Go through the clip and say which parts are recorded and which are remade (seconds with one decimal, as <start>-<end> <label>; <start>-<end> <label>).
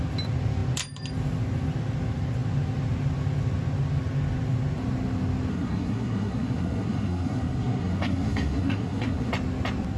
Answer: 0.0-5.5 recorded; 5.5-9.3 remade; 9.3-10.0 recorded